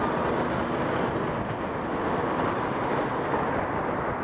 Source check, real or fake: real